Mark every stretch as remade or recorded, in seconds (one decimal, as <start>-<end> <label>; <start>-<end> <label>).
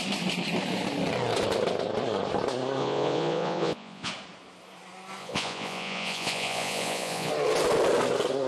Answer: 0.0-2.8 recorded; 2.8-4.1 remade; 4.1-5.2 recorded; 5.2-7.3 remade; 7.3-8.5 recorded